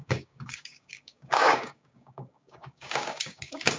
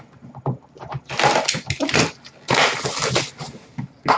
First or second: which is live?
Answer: second